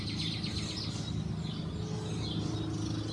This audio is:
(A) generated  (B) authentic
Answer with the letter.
B